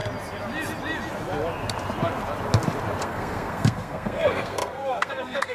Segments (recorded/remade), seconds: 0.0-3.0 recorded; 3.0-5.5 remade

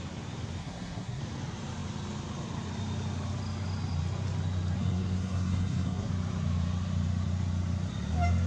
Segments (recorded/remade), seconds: 0.0-0.6 recorded; 0.6-1.2 remade; 1.2-4.8 recorded; 4.8-6.1 remade; 6.1-8.5 recorded

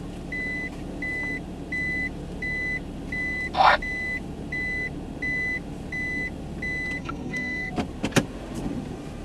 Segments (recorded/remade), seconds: 0.0-7.0 recorded; 7.0-7.7 remade; 7.7-9.2 recorded

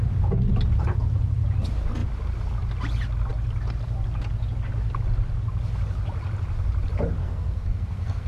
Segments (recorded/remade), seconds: 0.0-7.2 recorded; 7.2-8.3 remade